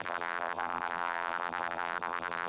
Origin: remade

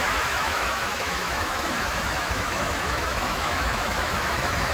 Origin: remade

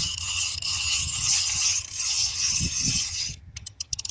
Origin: remade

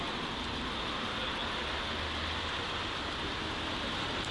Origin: recorded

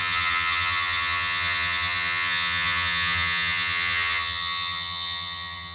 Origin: remade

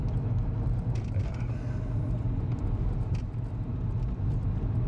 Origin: remade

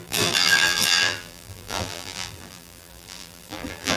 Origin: remade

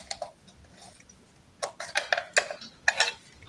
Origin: recorded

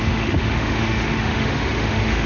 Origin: remade